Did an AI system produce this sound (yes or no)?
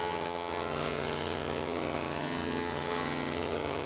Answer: yes